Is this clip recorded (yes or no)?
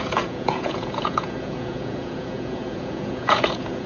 no